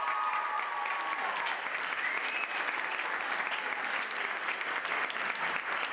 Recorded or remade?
recorded